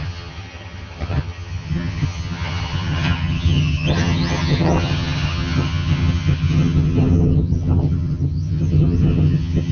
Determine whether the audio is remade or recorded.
remade